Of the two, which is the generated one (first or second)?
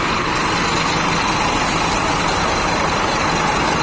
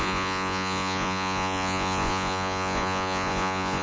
second